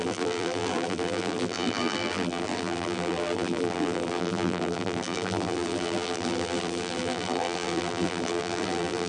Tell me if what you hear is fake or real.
fake